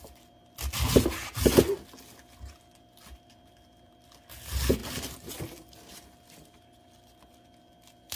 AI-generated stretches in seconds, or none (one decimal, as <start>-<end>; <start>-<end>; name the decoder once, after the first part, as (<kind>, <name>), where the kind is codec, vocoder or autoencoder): none